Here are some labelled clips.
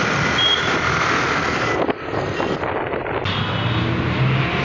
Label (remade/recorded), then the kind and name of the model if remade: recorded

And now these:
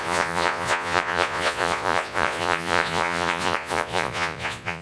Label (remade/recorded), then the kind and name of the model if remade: remade, vocoder, Vocos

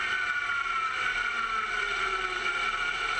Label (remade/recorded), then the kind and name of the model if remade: recorded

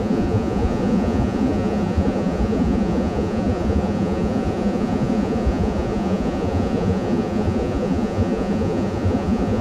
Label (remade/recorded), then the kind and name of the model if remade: remade, vocoder, Vocos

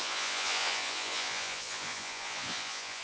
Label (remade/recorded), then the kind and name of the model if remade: remade, vocoder, Vocos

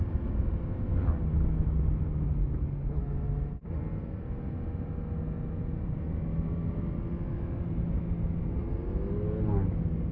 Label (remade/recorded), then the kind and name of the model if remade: recorded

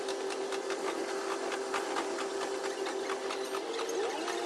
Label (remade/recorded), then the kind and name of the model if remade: recorded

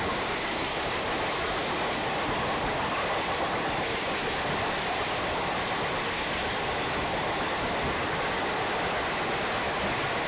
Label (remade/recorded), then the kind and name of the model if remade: recorded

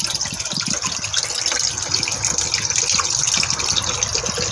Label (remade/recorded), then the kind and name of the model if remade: recorded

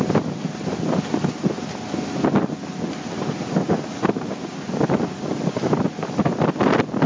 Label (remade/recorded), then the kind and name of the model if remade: recorded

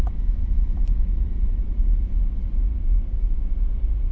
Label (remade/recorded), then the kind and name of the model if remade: recorded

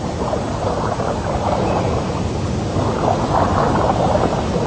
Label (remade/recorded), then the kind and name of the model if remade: recorded